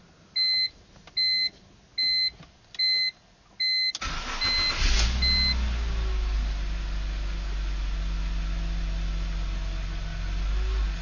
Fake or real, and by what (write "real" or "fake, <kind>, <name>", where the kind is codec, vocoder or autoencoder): real